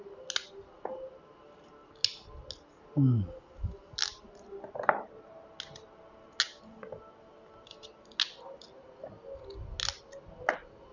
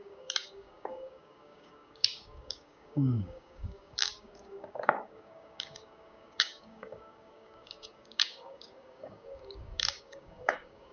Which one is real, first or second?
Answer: first